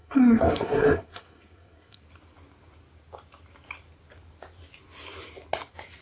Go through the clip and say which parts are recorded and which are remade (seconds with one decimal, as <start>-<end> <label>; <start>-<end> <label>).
0.0-2.0 remade; 2.0-6.0 recorded